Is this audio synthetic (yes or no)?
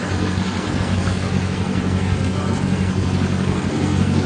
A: yes